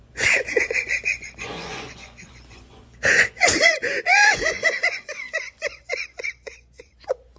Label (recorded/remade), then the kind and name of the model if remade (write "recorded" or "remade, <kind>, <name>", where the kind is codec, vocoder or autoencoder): remade, vocoder, Vocos